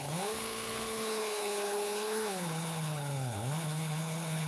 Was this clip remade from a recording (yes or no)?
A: yes